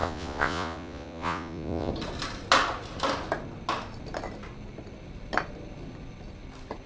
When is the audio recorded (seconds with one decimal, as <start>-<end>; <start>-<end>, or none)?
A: 1.9-6.9